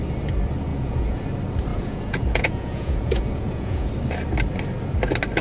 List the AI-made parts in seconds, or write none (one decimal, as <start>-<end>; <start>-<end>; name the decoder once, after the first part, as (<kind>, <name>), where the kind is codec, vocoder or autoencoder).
0.7-1.2 (vocoder, Vocos); 1.7-3.9